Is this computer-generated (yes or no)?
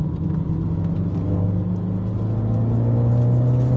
no